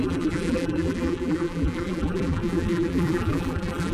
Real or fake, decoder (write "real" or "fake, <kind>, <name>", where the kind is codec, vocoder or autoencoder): fake, vocoder, BigVGAN v2